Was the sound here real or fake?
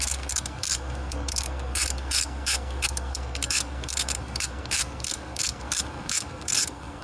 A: fake